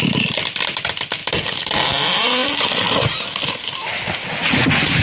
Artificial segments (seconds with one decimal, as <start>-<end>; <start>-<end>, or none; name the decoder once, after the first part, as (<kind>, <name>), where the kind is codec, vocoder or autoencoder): none